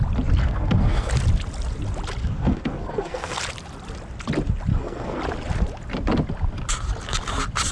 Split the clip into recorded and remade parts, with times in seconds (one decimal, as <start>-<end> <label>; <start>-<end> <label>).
0.0-0.4 recorded; 0.4-1.1 remade; 1.1-2.2 recorded; 2.2-3.4 remade; 3.4-4.7 recorded; 4.7-5.2 remade; 5.2-7.7 recorded